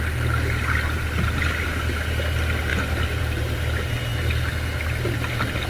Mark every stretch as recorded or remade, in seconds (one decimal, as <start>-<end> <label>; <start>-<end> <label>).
0.0-5.7 recorded